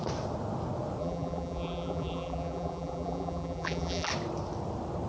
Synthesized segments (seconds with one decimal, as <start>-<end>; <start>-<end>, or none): 1.0-4.1

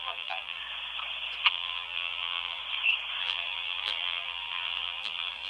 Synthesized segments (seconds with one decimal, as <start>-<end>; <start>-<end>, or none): 0.0-0.6; 1.5-2.6; 3.2-5.5

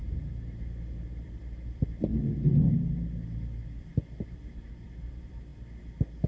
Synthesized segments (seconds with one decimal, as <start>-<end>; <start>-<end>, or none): 0.0-2.1; 3.0-3.9; 4.7-5.5

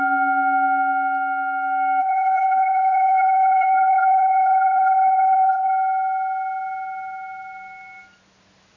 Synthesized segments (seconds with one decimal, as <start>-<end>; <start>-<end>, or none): 2.0-5.7

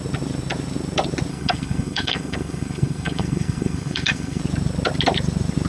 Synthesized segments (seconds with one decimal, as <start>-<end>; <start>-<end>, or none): 1.3-4.4

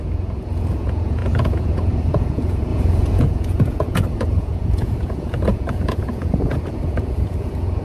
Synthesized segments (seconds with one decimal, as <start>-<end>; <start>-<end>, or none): 0.0-7.8

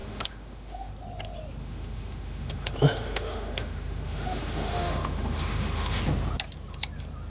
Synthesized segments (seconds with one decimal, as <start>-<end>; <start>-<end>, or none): 0.0-0.9; 1.6-6.0